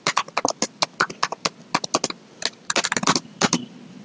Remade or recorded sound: recorded